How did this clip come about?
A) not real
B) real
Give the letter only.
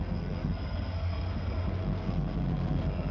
A